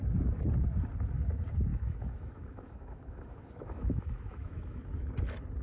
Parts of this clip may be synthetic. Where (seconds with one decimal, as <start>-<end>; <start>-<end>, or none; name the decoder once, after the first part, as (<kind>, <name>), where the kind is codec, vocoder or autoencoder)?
1.7-5.1 (autoencoder, DAC-VAE)